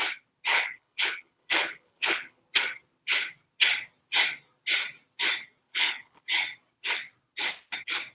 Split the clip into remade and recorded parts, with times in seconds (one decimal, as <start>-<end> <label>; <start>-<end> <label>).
0.0-0.5 recorded; 0.5-2.4 remade; 2.4-5.7 recorded; 5.7-6.2 remade; 6.2-8.1 recorded